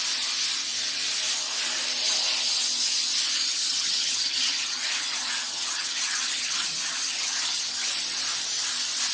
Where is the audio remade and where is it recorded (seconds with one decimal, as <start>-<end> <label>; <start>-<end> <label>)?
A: 0.0-3.5 recorded; 3.5-7.9 remade; 7.9-9.1 recorded